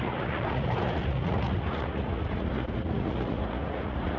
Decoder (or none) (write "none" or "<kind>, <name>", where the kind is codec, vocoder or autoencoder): vocoder, Vocos